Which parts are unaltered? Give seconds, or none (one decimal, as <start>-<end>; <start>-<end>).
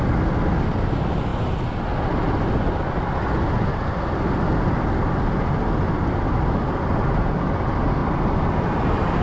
0.0-9.2